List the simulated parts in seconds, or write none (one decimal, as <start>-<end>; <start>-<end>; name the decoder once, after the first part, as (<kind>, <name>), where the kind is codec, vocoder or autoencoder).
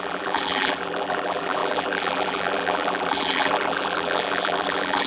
0.0-5.1 (vocoder, BigVGAN v2)